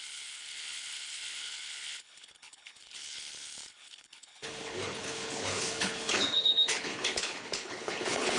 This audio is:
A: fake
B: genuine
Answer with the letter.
A